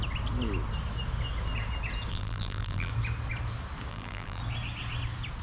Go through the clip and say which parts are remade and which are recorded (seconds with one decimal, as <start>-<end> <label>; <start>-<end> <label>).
0.0-2.1 recorded; 2.1-2.9 remade; 2.9-3.9 recorded; 3.9-4.4 remade; 4.4-5.4 recorded